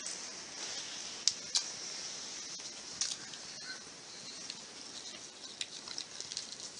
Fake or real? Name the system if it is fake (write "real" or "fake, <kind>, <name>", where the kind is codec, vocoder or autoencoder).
real